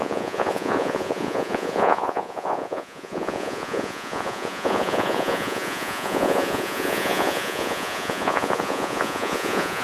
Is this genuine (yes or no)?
no